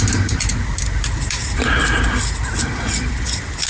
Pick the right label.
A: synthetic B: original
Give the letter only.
B